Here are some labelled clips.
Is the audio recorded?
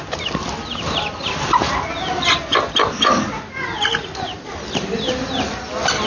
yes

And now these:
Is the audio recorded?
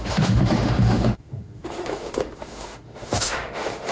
no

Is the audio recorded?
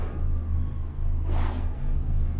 no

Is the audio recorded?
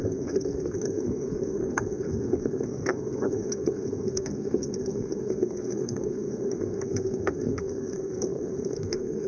no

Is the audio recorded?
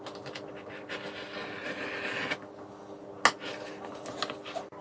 yes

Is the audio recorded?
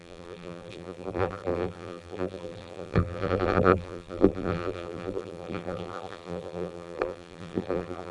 no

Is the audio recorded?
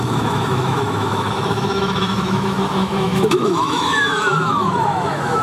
no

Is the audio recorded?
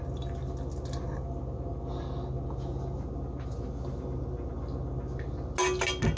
yes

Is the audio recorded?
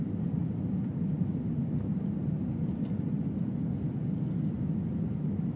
yes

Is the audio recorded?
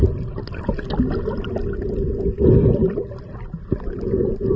yes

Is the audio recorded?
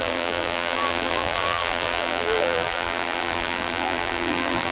no